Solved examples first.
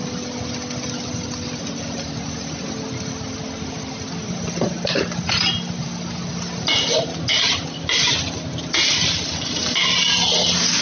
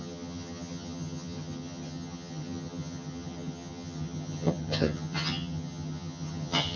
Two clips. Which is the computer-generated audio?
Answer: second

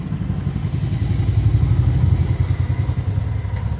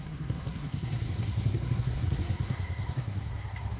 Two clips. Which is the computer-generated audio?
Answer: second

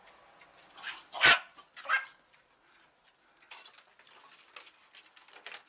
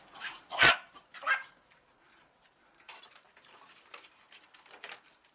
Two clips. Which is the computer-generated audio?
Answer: second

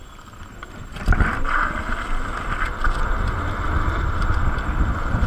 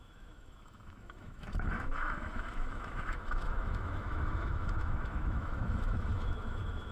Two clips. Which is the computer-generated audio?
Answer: second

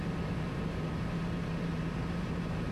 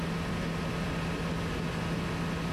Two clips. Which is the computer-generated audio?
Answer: first